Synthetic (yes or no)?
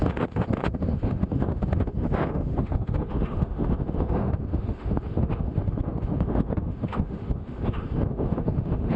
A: yes